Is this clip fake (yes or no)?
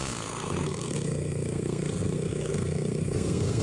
yes